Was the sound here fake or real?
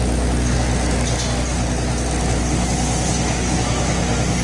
real